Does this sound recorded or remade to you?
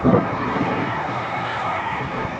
remade